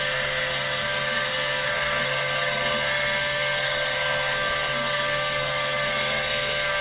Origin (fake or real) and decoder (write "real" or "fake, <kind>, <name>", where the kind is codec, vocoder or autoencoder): fake, codec, SNAC